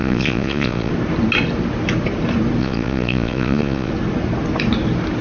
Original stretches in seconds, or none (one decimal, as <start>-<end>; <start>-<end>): 0.9-2.6; 3.9-5.2